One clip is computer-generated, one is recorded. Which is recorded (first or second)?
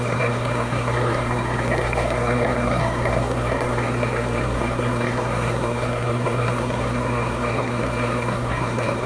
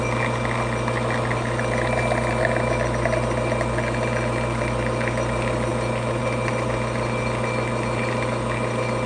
second